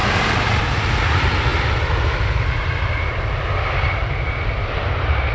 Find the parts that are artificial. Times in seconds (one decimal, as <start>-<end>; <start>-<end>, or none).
none